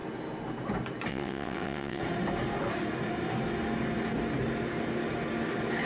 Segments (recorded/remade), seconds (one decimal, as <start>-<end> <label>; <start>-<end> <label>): 0.0-1.1 recorded; 1.1-2.0 remade; 2.0-5.9 recorded